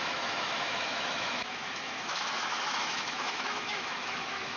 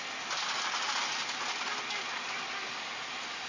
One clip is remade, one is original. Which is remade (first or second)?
first